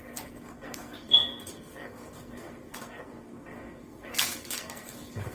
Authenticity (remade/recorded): remade